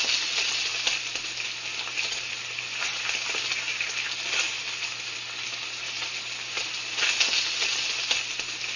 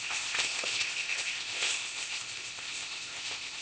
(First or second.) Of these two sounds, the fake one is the second